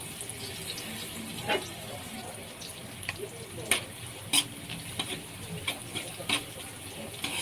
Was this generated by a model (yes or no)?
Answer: no